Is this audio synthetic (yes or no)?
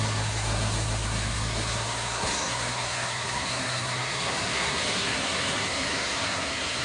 yes